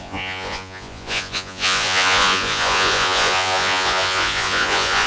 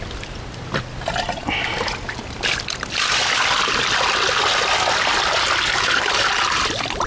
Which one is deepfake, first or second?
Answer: first